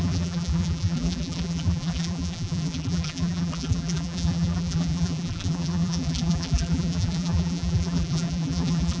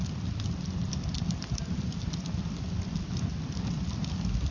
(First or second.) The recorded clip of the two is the second